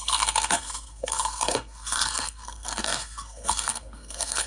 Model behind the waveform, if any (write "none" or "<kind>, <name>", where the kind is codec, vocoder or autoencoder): codec, SNAC